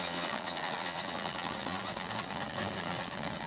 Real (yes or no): no